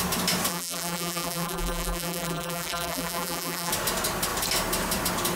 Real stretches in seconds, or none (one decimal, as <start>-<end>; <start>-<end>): 0.0-0.5; 3.7-5.4